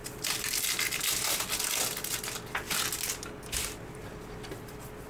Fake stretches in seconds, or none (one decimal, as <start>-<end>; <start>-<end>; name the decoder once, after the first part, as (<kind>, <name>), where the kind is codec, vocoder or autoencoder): none